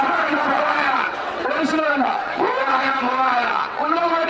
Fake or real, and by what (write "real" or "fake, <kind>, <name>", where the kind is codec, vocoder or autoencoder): fake, vocoder, WaveNeXt